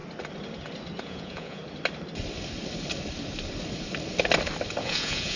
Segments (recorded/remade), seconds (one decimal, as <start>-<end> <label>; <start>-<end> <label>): 0.0-1.0 recorded; 1.0-1.6 remade; 1.6-4.8 recorded; 4.8-5.4 remade